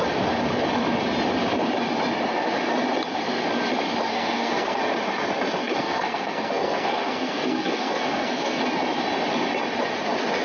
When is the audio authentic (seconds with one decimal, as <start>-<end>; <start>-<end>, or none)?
0.0-4.1; 4.8-5.6; 8.6-10.4